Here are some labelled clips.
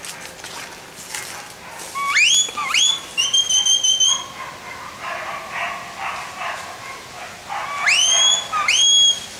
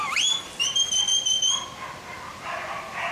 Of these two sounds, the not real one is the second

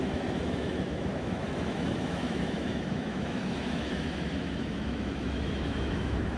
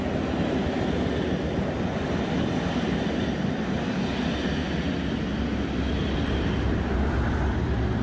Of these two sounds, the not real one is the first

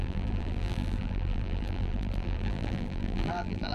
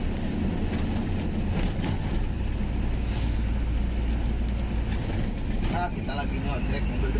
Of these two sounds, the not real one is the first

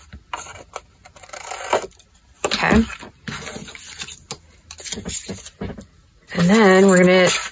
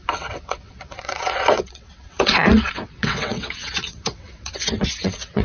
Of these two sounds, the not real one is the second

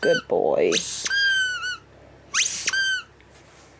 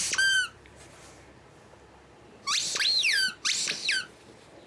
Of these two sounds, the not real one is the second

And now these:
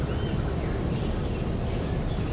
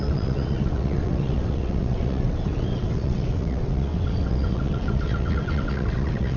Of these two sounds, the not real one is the second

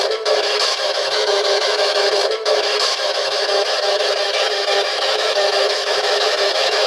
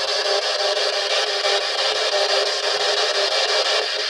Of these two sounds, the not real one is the first